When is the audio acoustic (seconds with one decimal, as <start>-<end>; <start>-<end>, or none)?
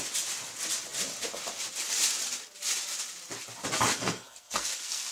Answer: 0.0-3.9